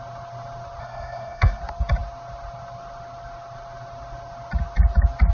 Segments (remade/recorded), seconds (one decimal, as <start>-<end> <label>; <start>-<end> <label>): 0.0-0.8 recorded; 0.8-1.6 remade; 1.6-5.3 recorded